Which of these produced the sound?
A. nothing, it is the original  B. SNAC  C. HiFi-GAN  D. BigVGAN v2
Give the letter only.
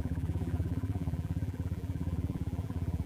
D